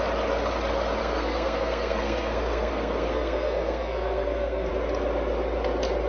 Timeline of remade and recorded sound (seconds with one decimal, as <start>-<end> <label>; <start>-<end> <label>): 0.0-1.0 recorded; 1.0-4.7 remade; 4.7-6.1 recorded